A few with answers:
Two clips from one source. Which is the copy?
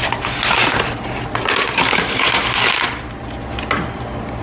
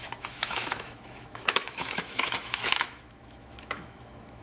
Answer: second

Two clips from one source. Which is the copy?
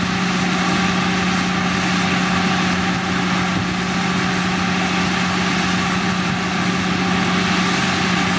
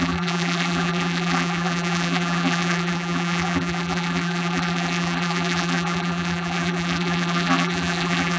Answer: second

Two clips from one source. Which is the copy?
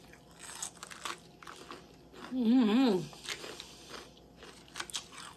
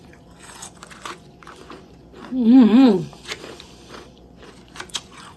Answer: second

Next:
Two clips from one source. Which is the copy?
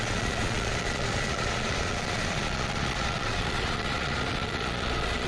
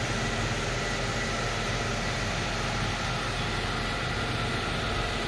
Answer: first